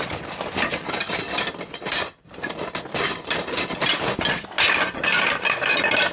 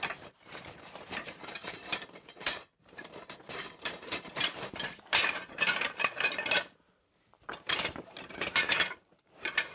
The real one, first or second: first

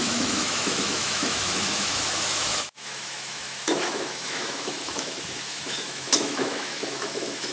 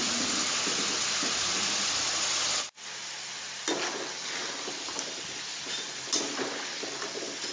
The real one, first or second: second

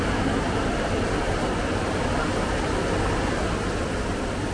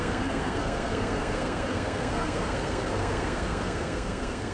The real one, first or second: first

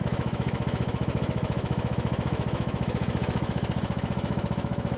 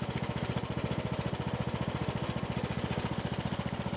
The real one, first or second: second